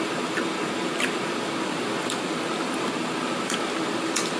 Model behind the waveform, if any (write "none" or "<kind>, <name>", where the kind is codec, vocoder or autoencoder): vocoder, BigVGAN v2